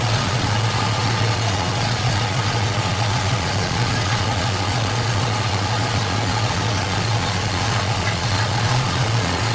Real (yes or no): no